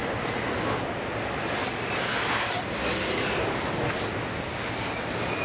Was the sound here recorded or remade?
recorded